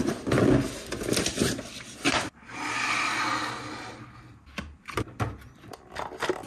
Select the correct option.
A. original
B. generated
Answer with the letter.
A